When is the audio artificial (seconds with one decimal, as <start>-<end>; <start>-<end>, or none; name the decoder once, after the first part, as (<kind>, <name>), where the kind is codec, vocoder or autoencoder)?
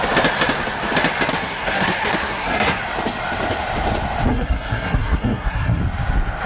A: 1.3-2.8 (codec, SNAC); 4.3-5.8